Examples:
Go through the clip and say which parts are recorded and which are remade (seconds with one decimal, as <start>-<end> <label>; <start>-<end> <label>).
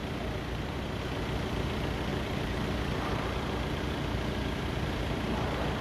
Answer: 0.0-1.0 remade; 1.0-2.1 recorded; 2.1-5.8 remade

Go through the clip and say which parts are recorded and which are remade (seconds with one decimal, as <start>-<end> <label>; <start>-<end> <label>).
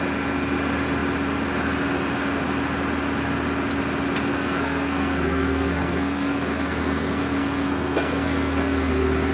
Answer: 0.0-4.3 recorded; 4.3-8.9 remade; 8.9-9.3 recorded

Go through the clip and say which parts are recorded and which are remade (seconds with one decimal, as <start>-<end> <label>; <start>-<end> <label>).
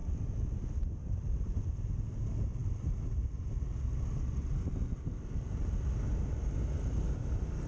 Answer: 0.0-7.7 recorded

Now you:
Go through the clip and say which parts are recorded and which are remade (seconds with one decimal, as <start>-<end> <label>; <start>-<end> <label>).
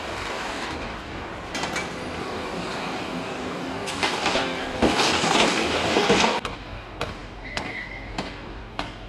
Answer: 0.0-1.3 remade; 1.3-2.2 recorded; 2.2-9.1 remade